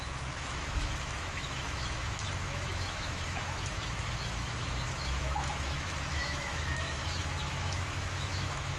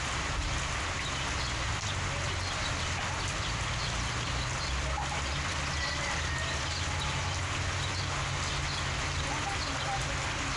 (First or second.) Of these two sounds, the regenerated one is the first